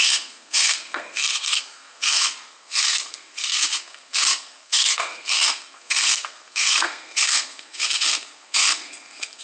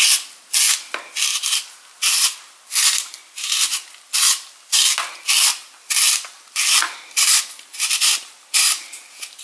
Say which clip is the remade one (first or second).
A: first